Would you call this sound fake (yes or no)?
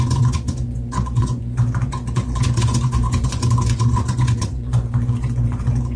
yes